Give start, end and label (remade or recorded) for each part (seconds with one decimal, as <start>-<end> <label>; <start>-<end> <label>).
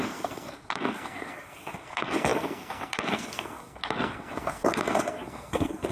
0.0-5.9 remade